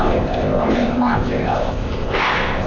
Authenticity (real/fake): fake